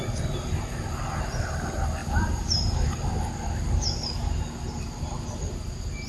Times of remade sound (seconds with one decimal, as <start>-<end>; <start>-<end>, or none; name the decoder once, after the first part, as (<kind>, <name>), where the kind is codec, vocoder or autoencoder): 2.0-2.9 (vocoder, BigVGAN v2)